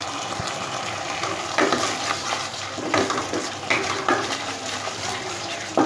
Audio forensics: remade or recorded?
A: remade